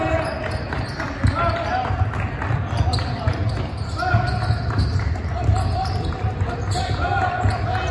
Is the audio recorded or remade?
recorded